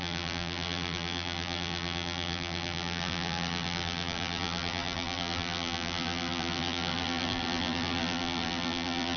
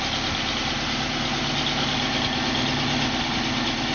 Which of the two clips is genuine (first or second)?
second